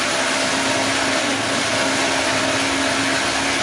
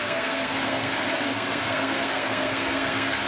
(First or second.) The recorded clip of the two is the first